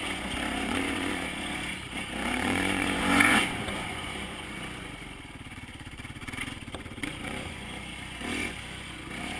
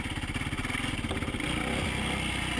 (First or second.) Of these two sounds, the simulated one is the first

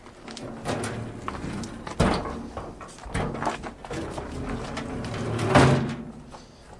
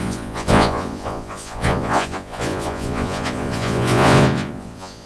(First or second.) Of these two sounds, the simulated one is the second